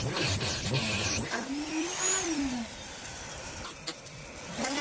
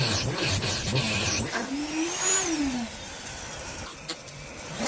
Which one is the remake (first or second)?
first